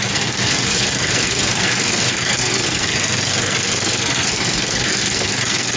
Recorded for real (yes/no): no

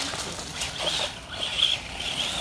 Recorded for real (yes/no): yes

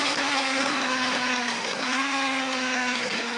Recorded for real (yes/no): no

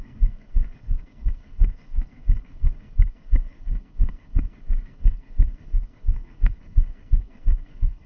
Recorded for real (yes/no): no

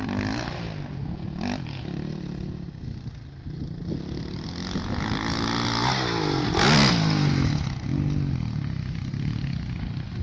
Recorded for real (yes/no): yes